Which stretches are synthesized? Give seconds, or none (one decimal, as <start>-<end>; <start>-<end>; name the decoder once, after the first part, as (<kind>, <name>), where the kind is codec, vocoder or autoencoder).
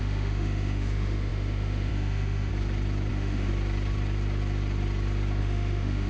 0.0-2.5 (autoencoder, DAC-VAE); 3.1-3.5; 5.4-6.1